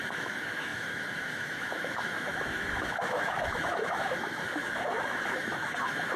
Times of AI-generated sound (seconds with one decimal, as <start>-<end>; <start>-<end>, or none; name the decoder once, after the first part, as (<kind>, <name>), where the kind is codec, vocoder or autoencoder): 0.0-6.2 (autoencoder, DAC-VAE)